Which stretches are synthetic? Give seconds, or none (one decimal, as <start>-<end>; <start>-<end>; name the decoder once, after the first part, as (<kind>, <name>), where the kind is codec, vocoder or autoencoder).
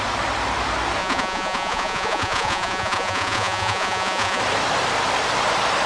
1.0-4.4 (vocoder, Vocos)